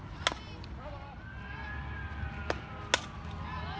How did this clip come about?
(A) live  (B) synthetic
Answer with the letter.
A